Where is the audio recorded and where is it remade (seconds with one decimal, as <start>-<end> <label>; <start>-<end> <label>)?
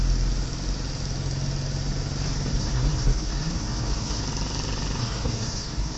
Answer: 0.0-2.6 recorded; 2.6-4.2 remade; 4.2-5.0 recorded; 5.0-6.0 remade